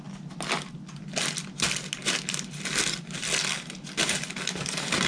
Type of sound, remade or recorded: recorded